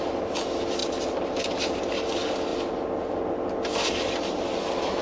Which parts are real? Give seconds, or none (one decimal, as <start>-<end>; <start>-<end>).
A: 0.0-5.0